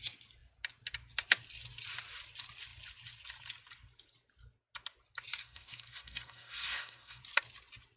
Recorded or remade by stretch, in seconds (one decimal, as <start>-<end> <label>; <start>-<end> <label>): 0.0-5.4 recorded; 5.4-7.2 remade; 7.2-8.0 recorded